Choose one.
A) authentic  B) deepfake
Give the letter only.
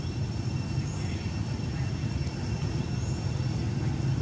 A